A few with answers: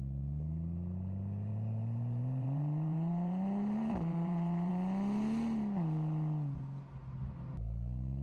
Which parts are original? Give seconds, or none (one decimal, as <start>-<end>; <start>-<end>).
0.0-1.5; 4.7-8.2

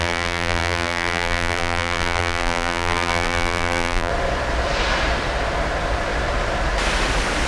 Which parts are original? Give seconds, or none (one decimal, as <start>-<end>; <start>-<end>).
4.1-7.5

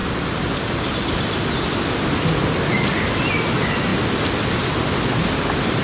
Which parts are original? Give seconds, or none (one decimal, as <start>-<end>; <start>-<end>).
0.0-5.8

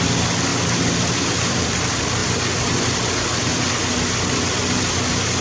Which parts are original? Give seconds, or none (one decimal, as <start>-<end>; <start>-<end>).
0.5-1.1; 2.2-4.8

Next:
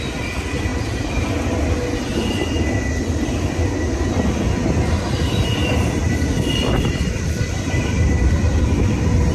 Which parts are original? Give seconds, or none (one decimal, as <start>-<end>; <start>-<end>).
0.0-6.0; 8.6-9.3